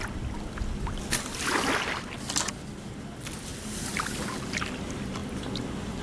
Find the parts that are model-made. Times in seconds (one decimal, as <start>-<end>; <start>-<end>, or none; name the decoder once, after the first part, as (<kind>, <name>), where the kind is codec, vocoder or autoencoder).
none